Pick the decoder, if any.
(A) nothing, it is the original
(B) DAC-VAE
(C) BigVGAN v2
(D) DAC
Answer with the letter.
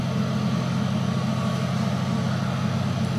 A